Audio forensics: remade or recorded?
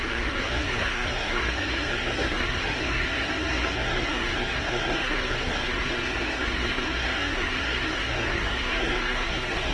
remade